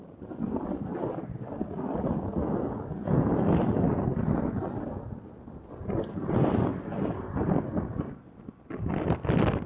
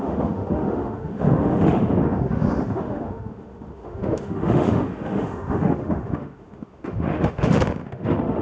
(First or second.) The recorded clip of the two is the first